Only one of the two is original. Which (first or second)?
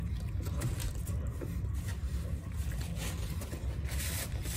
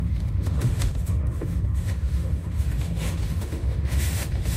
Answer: first